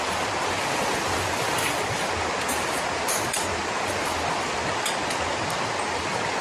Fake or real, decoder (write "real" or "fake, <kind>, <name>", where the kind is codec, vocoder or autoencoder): real